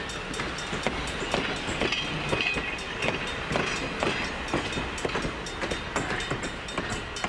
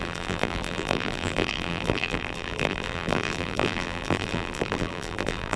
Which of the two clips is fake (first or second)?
second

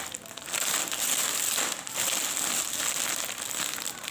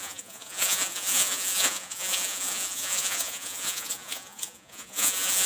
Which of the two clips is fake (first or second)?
second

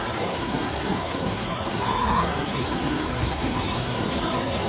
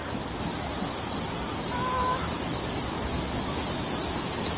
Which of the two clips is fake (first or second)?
first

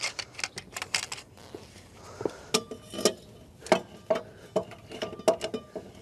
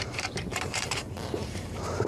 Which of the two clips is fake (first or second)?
second